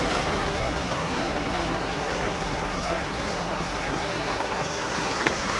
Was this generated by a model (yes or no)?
yes